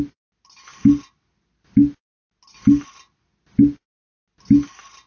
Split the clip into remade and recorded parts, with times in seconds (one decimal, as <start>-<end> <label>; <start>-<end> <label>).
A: 0.0-5.1 recorded